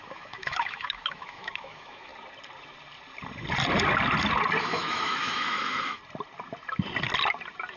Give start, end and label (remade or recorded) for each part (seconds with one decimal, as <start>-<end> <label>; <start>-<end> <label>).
0.0-2.1 remade; 2.1-4.6 recorded; 4.6-6.0 remade; 6.0-7.8 recorded